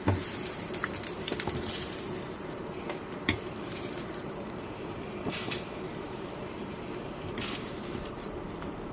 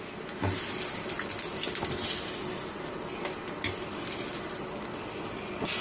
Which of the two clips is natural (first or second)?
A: second